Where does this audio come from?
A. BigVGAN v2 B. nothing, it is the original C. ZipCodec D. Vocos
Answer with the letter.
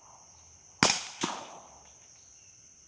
B